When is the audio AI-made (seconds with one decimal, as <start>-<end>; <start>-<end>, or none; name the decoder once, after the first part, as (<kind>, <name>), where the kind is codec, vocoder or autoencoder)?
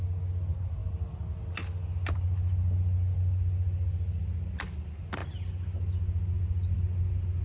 none